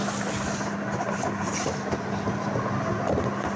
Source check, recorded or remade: recorded